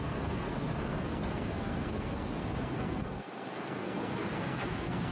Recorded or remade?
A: remade